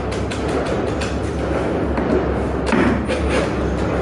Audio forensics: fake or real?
real